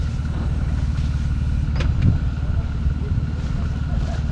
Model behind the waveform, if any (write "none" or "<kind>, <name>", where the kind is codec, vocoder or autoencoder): none